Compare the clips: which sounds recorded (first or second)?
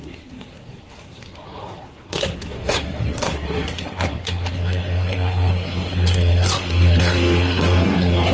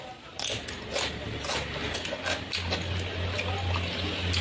second